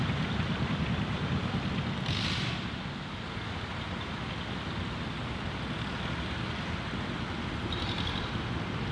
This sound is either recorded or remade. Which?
recorded